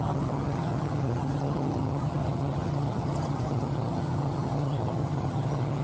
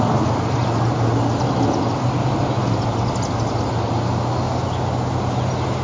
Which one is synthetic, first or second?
first